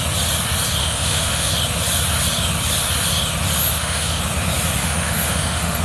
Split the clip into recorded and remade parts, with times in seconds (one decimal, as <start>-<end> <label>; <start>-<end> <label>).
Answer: 0.0-0.8 recorded; 0.8-1.5 remade; 1.5-3.6 recorded; 3.6-4.2 remade; 4.2-4.8 recorded; 4.8-5.8 remade